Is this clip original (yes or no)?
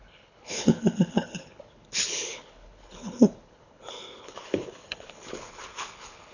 no